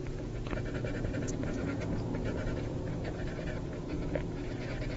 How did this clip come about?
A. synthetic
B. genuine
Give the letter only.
A